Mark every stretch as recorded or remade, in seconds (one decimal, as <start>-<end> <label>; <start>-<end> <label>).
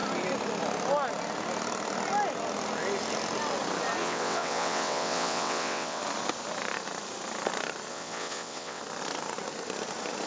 0.0-4.0 recorded; 4.0-6.0 remade; 6.0-7.9 recorded; 7.9-8.8 remade; 8.8-10.3 recorded